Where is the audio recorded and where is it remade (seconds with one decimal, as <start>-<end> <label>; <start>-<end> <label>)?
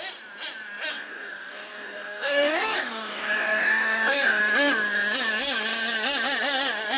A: 0.0-0.9 recorded; 0.9-4.4 remade; 4.4-7.0 recorded